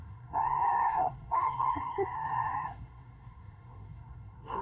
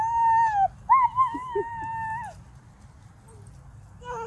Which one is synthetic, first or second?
first